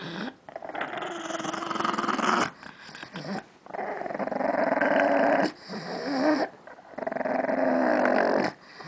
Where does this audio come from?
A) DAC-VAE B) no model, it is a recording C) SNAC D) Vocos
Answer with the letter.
B